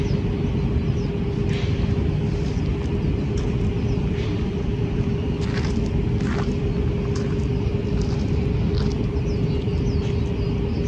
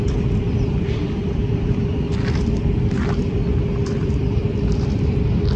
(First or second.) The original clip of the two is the first